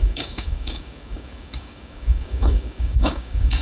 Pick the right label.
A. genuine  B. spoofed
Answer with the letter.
B